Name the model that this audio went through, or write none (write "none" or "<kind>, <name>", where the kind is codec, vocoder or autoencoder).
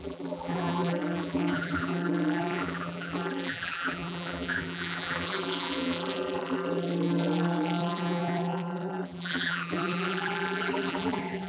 vocoder, BigVGAN v2